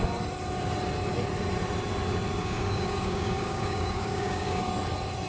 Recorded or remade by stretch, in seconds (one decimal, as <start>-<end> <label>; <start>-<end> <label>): 0.0-2.4 recorded; 2.4-4.6 remade; 4.6-5.3 recorded